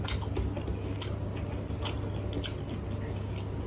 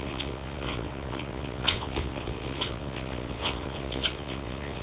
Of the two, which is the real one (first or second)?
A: first